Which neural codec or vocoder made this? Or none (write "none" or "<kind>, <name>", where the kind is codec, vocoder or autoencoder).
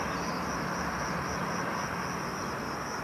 none